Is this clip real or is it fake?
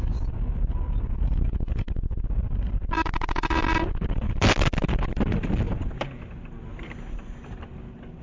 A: real